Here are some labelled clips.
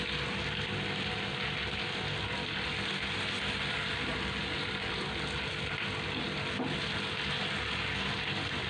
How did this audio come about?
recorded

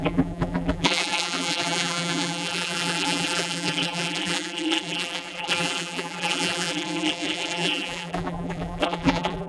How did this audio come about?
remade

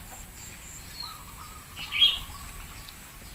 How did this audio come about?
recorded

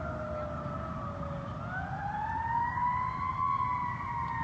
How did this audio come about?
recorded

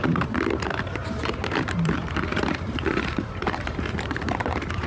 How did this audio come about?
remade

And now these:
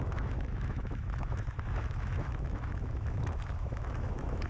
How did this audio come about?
remade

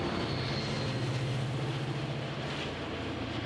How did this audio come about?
recorded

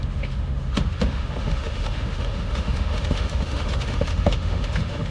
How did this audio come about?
remade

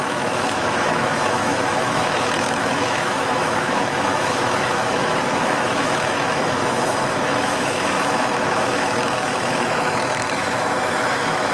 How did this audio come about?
remade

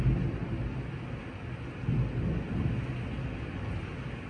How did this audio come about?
recorded